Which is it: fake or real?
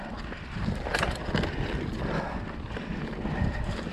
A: real